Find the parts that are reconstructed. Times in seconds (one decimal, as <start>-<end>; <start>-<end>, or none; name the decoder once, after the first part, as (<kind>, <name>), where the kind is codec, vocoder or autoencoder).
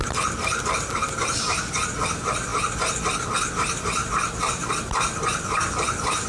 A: 0.0-2.5 (vocoder, BigVGAN v2); 3.2-6.3